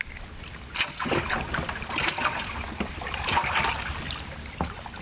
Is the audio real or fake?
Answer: real